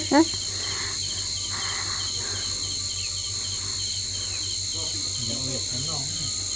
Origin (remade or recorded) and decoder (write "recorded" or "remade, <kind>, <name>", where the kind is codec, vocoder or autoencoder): recorded